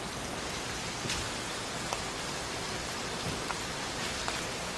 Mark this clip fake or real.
real